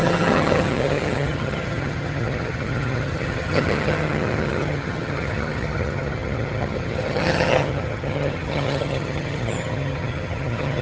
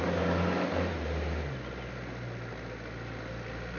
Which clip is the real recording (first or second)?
second